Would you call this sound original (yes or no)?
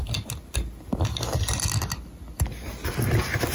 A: yes